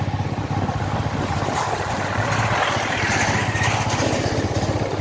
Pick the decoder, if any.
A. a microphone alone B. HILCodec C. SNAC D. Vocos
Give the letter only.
A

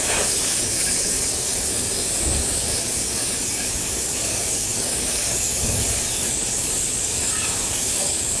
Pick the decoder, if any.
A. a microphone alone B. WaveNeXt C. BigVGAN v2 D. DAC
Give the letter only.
D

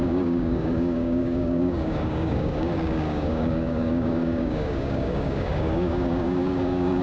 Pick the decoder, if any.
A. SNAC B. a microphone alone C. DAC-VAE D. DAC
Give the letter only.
D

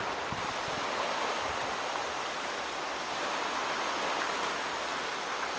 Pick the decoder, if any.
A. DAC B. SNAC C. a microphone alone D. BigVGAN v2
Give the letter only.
C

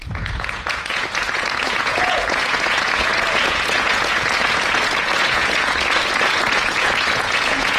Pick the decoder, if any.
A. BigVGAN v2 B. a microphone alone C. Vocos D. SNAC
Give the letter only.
C